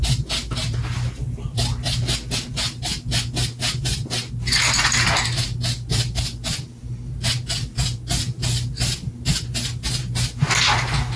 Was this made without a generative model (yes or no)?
yes